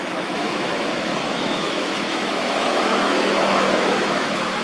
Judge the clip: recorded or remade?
remade